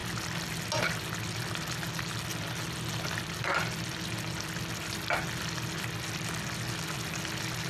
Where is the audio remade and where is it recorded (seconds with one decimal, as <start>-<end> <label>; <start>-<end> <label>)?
0.0-7.7 recorded